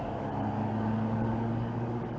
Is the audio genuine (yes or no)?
no